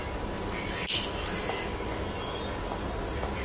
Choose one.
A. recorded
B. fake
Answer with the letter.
A